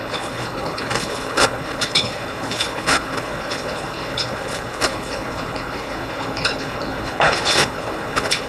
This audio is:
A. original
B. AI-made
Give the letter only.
B